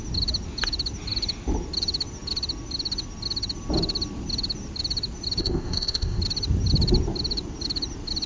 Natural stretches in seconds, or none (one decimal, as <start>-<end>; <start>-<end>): 0.0-5.4; 6.2-8.3